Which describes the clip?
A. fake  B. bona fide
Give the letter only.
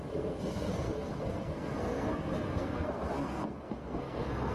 A